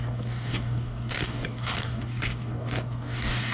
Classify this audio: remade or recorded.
remade